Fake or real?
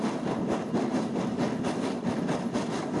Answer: real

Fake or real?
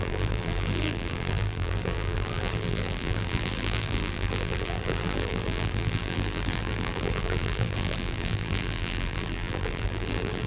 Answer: fake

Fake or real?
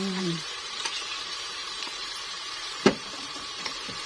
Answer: fake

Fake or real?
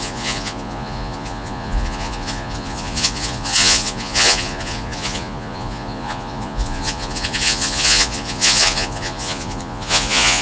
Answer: fake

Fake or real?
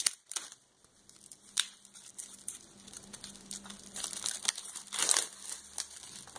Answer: fake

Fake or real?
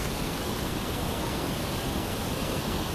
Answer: fake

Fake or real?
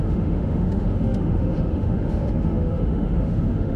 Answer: fake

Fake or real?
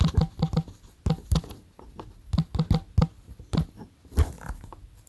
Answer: real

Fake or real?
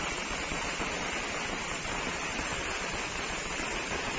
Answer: real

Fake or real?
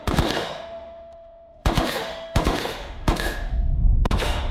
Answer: fake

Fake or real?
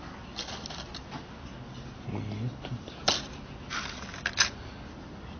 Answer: real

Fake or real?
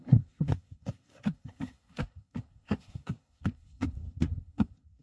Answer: fake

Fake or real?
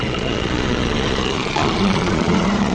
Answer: fake